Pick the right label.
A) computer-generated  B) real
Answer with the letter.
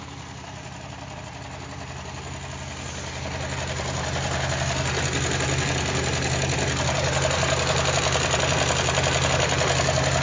B